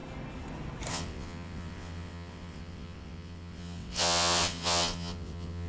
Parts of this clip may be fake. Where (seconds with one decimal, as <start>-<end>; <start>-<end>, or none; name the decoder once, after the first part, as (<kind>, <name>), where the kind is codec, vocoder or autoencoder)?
0.9-5.7 (vocoder, WaveNeXt)